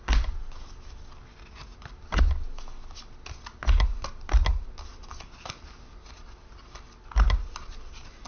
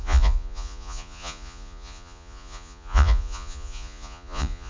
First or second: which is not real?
second